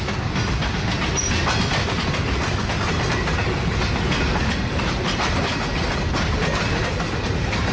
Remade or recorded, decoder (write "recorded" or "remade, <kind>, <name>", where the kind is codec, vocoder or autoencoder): recorded